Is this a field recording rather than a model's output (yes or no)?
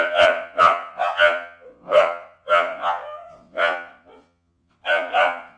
no